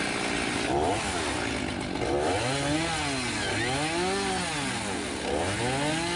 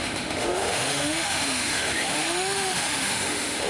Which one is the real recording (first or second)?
first